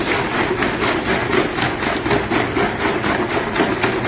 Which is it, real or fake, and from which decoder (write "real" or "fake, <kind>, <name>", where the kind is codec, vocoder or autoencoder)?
real